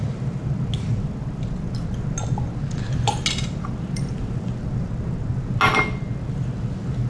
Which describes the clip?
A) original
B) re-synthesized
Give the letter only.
A